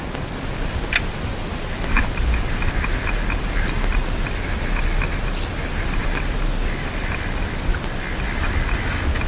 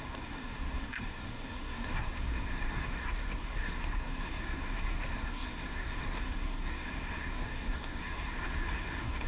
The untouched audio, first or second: first